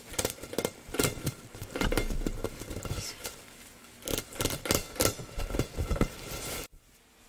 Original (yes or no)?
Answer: yes